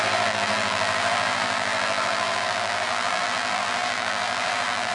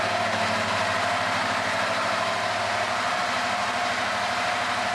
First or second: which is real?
second